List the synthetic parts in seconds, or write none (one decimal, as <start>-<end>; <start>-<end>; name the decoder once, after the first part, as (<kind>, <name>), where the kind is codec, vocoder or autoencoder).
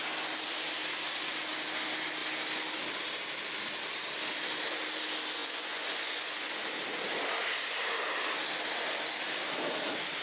5.4-6.5 (vocoder, Vocos)